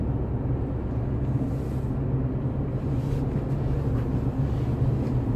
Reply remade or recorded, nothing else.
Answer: recorded